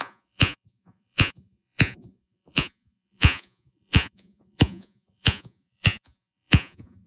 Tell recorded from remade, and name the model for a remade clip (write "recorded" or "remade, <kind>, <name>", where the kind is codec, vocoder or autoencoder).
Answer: remade, vocoder, Vocos